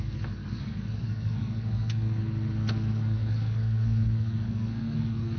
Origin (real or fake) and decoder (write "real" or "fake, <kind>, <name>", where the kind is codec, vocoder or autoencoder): fake, codec, SNAC